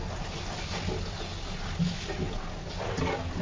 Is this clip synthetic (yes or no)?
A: no